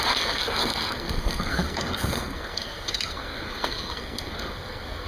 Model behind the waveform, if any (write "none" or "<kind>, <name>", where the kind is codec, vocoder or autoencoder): codec, SNAC